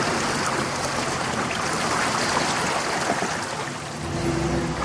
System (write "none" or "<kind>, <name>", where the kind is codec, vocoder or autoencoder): none